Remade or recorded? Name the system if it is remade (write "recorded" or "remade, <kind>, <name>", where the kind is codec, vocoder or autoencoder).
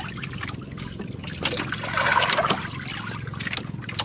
recorded